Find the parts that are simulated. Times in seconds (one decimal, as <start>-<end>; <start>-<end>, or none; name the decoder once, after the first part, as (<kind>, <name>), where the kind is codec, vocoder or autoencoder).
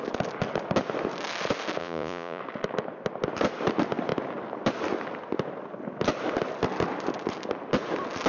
1.8-2.4 (vocoder, Vocos)